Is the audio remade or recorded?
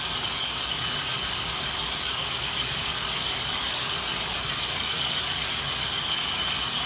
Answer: remade